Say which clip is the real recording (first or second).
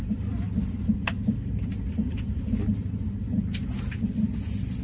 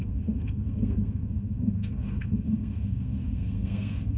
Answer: first